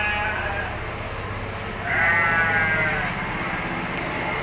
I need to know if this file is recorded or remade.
recorded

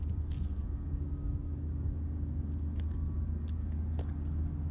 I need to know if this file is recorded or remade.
recorded